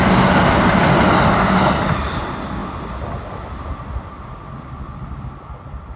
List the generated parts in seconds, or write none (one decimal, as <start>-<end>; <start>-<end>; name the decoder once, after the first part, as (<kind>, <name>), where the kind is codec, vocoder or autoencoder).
none